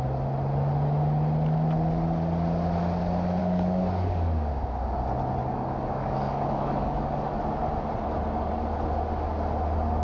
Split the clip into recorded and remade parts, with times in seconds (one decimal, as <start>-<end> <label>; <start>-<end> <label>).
0.0-3.4 recorded; 3.4-4.5 remade; 4.5-5.4 recorded; 5.4-7.4 remade; 7.4-10.0 recorded